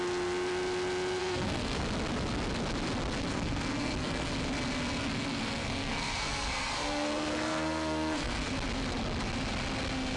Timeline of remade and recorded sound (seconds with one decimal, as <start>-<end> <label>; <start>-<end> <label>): 0.0-1.2 recorded; 1.2-1.8 remade; 1.8-3.3 recorded; 3.3-4.3 remade; 4.3-5.0 recorded; 5.0-8.5 remade; 8.5-10.2 recorded

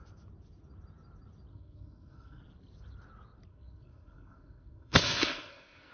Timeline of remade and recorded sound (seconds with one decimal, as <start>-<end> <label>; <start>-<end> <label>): 0.0-1.5 recorded; 1.5-2.4 remade; 2.4-3.5 recorded; 3.5-5.9 remade

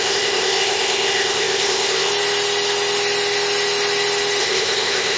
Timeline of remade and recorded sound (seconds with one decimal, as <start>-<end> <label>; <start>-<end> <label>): 0.0-2.1 remade; 2.1-4.4 recorded; 4.4-5.2 remade

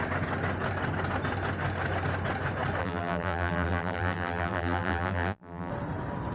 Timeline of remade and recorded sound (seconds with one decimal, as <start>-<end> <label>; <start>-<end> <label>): 0.0-2.8 recorded; 2.8-5.7 remade; 5.7-6.3 recorded